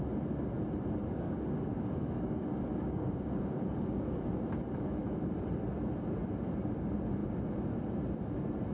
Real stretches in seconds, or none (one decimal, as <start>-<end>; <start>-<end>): 0.0-1.0; 4.3-8.7